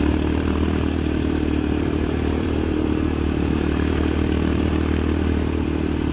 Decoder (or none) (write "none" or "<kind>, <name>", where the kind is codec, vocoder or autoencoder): vocoder, BigVGAN v2